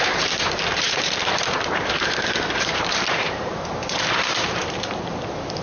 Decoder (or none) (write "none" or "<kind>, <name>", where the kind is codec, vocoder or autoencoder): vocoder, BigVGAN v2